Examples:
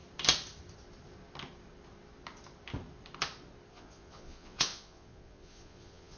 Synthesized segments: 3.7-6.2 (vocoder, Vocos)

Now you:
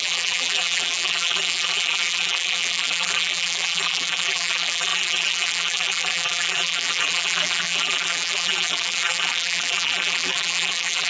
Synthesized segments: 0.0-11.1 (vocoder, BigVGAN v2)

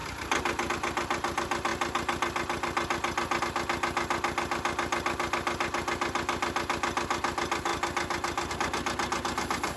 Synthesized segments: none

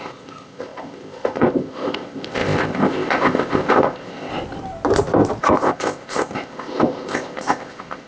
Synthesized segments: 0.0-4.3 (codec, ZipCodec); 5.4-8.1

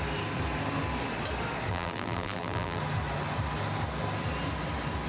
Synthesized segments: 1.7-2.8 (vocoder, BigVGAN v2)